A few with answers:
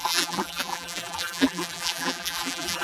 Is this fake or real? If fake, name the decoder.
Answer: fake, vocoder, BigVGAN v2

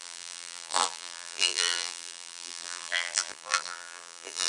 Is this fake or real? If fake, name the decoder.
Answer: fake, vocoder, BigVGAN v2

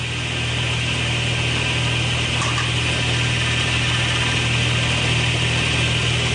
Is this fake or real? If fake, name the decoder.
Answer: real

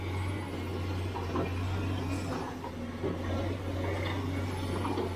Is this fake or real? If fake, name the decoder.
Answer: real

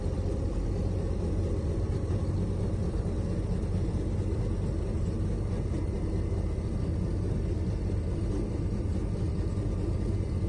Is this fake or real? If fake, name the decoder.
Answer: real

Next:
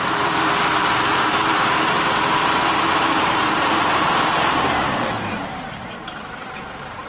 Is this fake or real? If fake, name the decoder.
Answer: fake, vocoder, BigVGAN v2